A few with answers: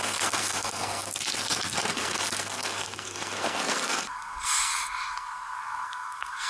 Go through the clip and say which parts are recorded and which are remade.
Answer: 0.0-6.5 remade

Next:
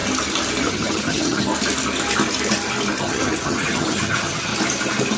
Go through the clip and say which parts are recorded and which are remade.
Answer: 0.0-0.6 recorded; 0.6-1.5 remade; 1.5-3.0 recorded; 3.0-4.5 remade; 4.5-5.2 recorded